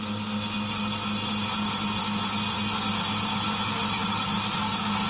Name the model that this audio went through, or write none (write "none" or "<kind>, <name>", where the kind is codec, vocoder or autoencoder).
none